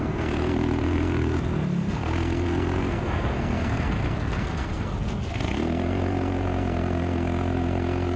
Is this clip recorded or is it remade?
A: remade